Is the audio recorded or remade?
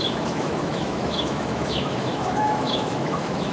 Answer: remade